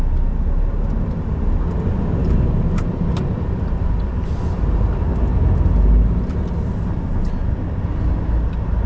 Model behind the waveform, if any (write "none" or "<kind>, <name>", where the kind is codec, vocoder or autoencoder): none